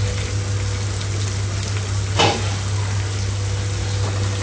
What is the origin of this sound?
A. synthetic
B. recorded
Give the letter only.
B